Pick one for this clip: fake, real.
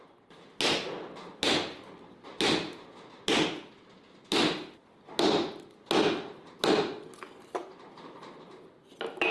real